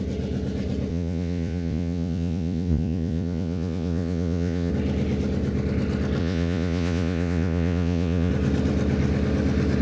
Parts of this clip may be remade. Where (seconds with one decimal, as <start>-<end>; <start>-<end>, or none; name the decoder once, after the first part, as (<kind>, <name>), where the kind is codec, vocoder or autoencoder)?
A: 0.9-4.7 (vocoder, Vocos); 6.2-8.3